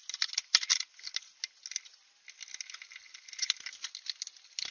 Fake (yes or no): no